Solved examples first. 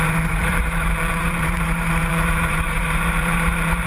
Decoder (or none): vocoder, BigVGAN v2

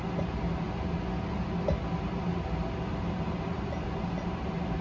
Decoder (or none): none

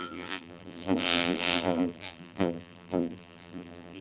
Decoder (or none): vocoder, BigVGAN v2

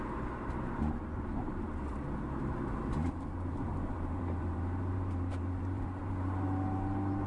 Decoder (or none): vocoder, BigVGAN v2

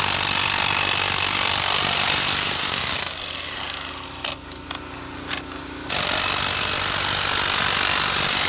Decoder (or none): vocoder, BigVGAN v2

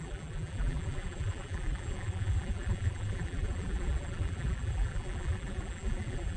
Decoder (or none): vocoder, BigVGAN v2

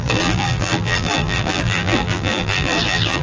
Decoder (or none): vocoder, BigVGAN v2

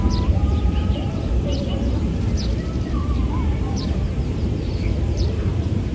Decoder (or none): vocoder, BigVGAN v2